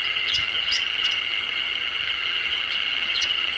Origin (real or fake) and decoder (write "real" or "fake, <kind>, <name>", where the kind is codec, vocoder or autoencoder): fake, vocoder, HiFi-GAN